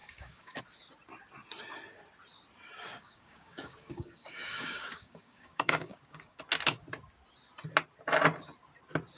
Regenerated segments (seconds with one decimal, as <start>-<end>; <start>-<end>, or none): 0.0-0.6; 2.9-6.4